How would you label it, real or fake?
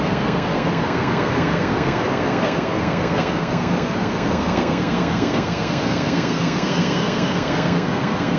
fake